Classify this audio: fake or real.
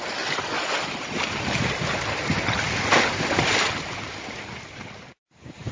real